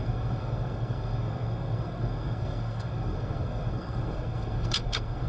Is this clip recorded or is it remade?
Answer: remade